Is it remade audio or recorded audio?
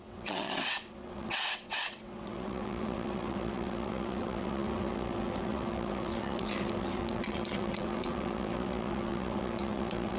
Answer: remade